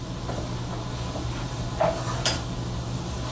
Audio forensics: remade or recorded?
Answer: recorded